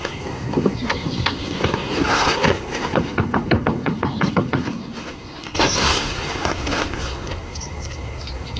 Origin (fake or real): fake